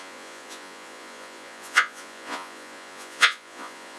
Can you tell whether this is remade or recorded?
remade